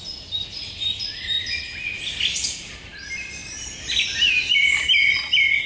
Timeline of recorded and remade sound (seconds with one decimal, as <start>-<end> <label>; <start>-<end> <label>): 0.0-3.4 recorded; 3.4-4.3 remade; 4.3-5.7 recorded